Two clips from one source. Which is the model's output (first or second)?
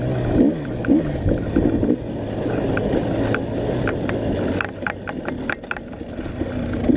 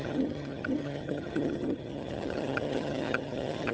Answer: second